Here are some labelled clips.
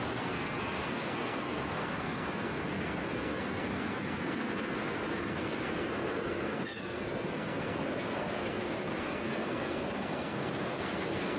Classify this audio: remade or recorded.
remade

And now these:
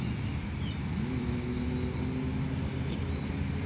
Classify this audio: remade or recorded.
recorded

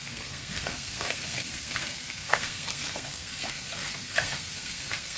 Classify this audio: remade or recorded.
remade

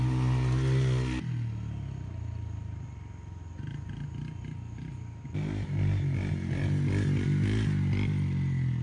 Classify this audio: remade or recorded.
recorded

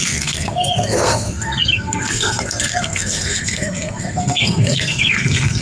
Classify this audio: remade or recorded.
remade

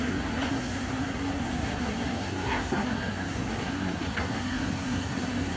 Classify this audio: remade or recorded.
remade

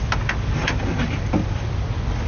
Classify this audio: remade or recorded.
recorded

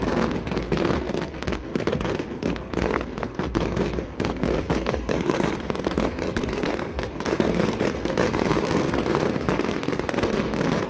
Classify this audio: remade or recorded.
remade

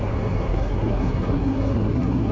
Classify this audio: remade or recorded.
remade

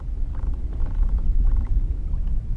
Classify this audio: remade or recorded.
recorded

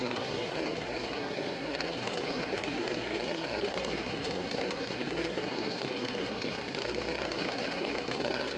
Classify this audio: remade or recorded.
remade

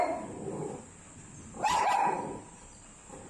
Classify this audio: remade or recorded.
recorded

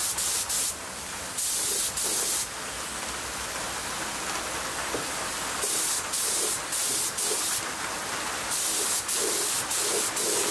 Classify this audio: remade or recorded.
recorded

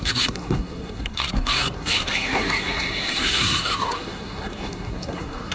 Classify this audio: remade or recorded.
remade